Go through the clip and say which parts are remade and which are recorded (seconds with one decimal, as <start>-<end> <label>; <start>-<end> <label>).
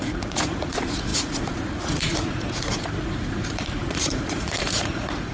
0.0-5.3 remade